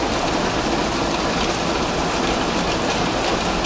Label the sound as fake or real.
real